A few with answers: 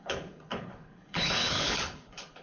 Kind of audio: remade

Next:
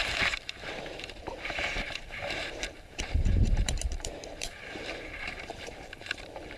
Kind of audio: remade